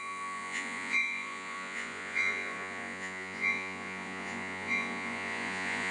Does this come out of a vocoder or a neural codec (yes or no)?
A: yes